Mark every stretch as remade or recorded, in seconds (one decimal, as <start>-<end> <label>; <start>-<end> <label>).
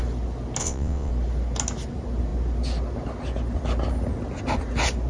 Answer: 0.0-0.6 recorded; 0.6-1.1 remade; 1.1-5.1 recorded